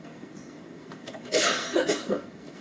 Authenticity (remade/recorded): remade